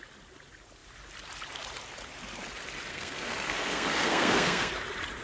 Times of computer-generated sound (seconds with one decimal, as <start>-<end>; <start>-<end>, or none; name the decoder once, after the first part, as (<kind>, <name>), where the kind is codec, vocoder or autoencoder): 2.9-4.7 (codec, SNAC)